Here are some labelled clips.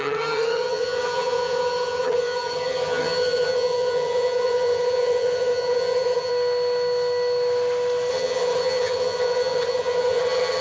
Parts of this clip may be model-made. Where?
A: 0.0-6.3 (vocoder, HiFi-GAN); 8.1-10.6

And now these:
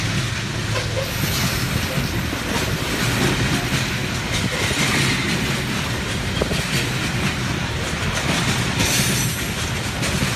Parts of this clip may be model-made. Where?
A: none

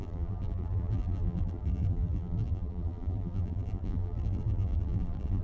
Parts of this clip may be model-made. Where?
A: 0.0-5.4 (vocoder, BigVGAN v2)

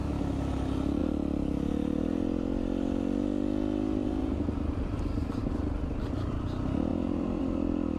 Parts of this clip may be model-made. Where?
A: 0.0-0.5 (autoencoder, DAC-VAE)

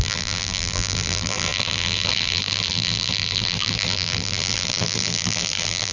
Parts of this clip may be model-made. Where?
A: 0.0-5.9 (vocoder, BigVGAN v2)

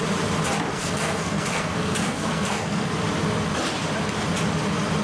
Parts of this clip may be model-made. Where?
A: 0.7-2.9 (codec, SNAC)